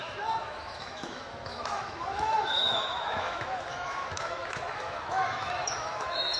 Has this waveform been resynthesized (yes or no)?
yes